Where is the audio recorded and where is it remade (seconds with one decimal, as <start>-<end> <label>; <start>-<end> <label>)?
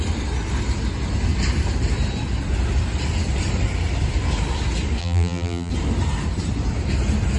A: 0.0-5.0 recorded; 5.0-5.7 remade; 5.7-7.4 recorded